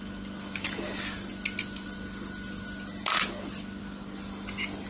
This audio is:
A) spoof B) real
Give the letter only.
B